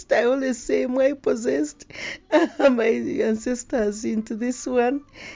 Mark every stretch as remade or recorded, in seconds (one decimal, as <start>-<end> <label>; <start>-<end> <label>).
0.0-5.4 recorded